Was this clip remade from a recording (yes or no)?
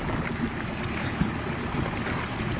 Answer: no